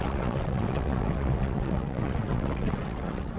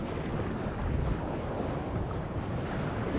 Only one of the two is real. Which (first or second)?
second